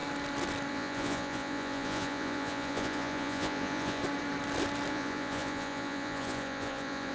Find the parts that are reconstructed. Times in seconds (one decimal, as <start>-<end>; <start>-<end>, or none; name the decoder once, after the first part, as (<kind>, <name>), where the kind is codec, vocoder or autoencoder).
0.7-4.0 (vocoder, Vocos); 4.9-7.1